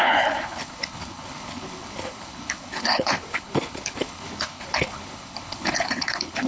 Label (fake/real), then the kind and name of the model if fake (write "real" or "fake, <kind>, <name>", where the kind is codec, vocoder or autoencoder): fake, codec, HILCodec